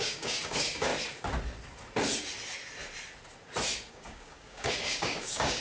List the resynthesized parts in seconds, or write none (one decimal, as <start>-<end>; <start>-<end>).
0.0-0.9; 3.9-5.6

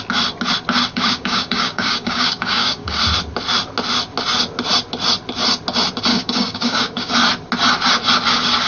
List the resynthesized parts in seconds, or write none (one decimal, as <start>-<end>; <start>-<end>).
0.9-3.0; 6.1-7.1

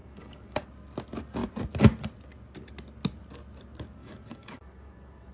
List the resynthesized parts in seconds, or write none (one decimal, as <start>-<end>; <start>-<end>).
0.0-0.6; 4.0-5.3

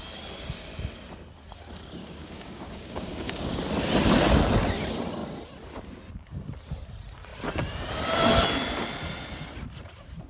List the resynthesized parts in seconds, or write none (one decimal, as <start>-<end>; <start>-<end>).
2.0-3.5

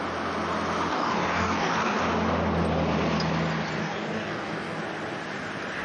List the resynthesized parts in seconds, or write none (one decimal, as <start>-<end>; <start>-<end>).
0.9-2.0; 3.8-4.8